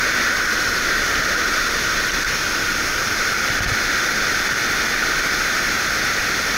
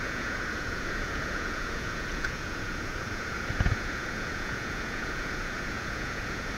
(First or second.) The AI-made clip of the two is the second